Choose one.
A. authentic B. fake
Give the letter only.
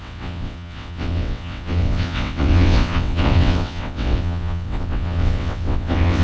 B